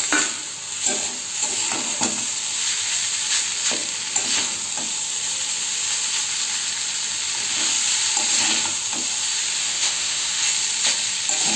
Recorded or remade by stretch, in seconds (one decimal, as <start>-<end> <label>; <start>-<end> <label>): 0.0-9.6 recorded; 9.6-10.3 remade; 10.3-11.6 recorded